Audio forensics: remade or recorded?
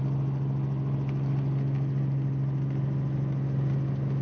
recorded